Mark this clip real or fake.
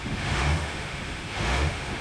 fake